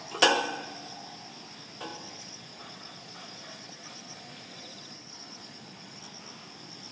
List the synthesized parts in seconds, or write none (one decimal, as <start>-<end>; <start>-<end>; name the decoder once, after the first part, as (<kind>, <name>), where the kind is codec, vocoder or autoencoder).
1.9-6.0 (vocoder, Vocos)